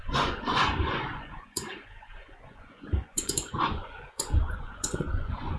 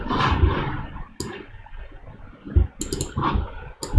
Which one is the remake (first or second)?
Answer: first